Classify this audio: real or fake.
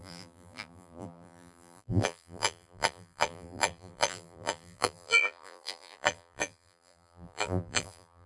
fake